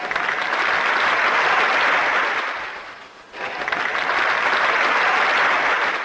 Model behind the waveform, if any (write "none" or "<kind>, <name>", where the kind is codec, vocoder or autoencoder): none